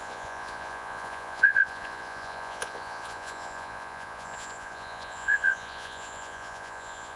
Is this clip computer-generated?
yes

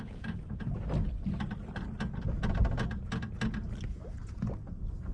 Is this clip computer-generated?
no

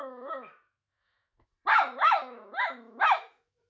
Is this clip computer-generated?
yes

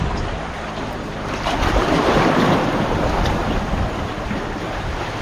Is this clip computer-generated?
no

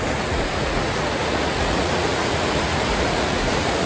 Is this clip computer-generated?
yes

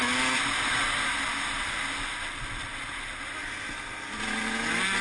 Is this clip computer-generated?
no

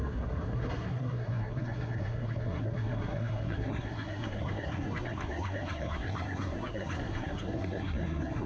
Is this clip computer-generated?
yes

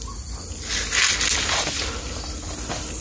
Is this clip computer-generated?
no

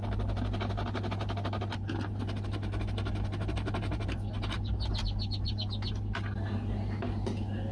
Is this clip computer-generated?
no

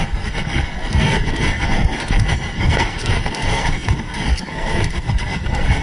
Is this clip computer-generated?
yes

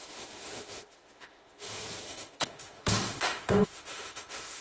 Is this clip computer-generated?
yes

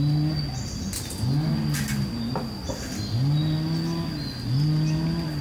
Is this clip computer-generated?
no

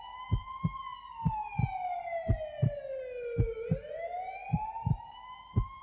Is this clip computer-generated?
no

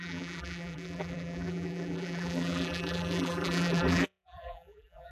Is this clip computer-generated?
yes